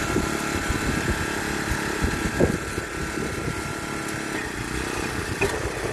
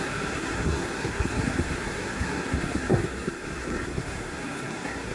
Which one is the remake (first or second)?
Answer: second